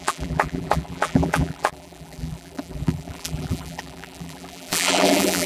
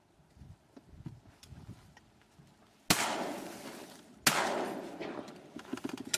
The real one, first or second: second